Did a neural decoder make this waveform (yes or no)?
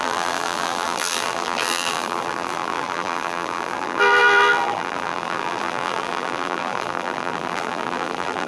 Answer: yes